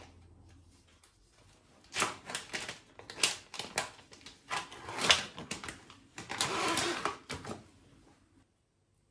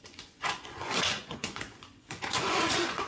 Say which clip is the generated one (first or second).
second